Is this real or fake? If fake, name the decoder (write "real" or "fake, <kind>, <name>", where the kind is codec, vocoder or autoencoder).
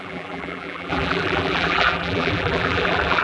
fake, vocoder, BigVGAN v2